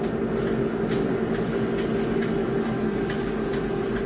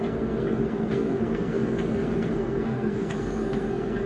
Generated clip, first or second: second